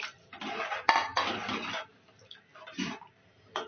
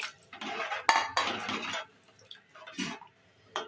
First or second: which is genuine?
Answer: second